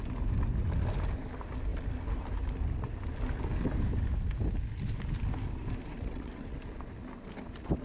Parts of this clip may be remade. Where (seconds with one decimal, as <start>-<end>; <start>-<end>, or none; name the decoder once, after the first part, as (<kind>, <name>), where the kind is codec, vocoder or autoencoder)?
5.9-6.6 (vocoder, WaveNeXt)